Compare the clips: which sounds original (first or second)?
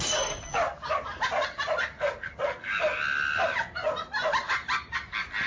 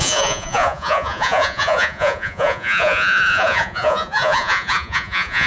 first